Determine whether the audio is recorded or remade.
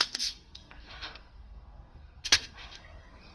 remade